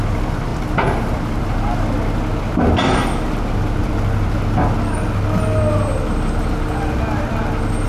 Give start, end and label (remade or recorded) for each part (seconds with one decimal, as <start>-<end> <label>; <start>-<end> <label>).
0.0-7.9 recorded